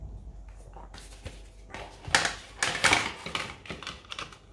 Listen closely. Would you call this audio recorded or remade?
recorded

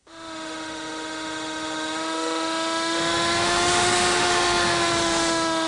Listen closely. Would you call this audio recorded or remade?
remade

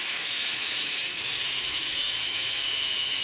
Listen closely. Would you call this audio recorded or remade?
remade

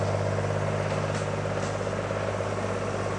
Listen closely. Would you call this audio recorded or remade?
recorded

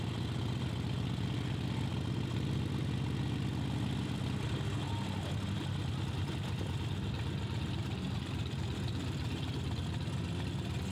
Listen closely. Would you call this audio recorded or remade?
recorded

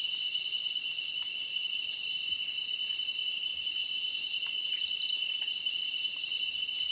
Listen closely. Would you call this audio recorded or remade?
recorded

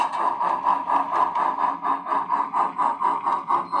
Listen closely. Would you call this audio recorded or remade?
recorded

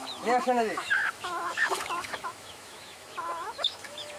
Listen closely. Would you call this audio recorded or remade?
remade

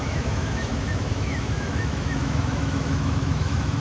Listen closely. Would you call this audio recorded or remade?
remade